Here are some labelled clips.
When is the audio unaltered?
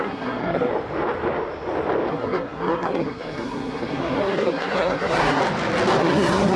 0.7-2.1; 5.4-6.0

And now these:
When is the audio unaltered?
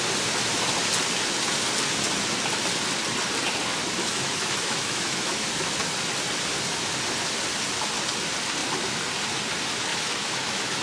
0.0-4.0; 5.3-9.9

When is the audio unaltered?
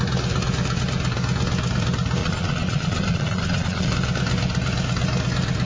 0.0-2.2; 3.9-5.7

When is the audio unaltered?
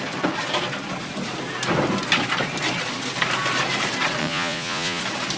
0.0-4.2; 5.0-5.4